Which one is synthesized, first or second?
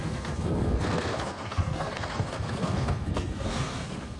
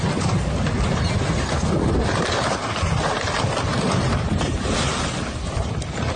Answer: first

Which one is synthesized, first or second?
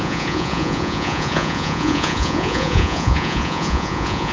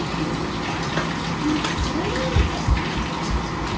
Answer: first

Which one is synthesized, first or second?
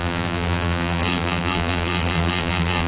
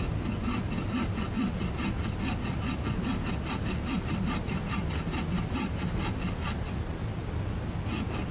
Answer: first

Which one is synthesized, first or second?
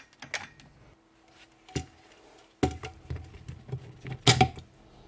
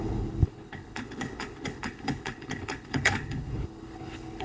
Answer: second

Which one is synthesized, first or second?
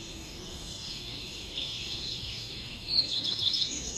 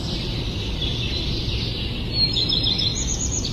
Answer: first